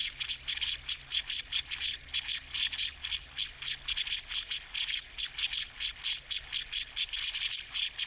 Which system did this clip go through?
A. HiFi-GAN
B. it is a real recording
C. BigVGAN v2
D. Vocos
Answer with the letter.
B